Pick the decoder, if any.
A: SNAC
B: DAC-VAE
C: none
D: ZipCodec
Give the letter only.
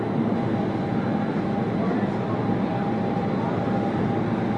C